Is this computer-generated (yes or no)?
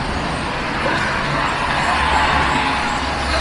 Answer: no